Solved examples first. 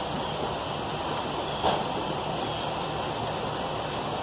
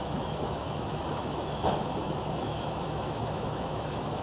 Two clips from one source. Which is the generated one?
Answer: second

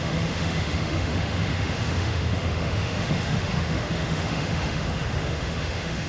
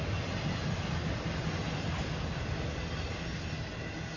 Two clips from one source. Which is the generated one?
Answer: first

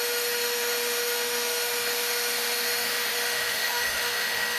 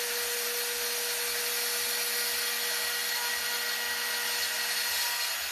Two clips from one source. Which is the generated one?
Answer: first